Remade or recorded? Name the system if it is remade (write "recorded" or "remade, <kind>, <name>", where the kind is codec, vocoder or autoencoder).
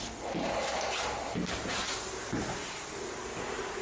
recorded